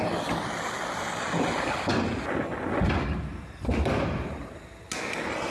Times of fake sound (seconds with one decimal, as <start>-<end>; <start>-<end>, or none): none